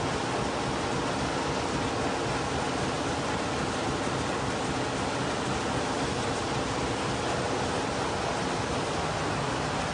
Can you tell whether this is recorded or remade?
recorded